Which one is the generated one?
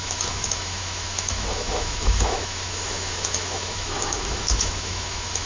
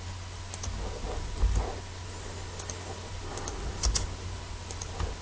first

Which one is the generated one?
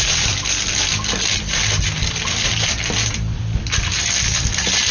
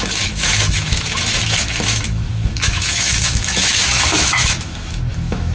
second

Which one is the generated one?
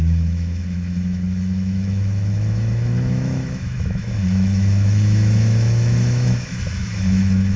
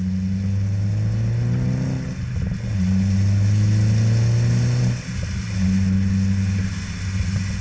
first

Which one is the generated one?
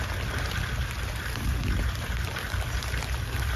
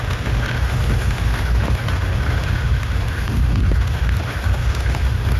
second